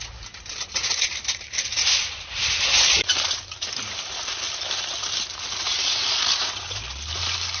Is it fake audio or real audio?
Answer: real